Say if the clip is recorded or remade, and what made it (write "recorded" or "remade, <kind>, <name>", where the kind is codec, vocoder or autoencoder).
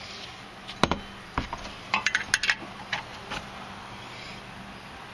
recorded